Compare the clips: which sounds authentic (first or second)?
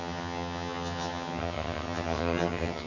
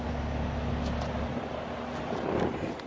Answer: second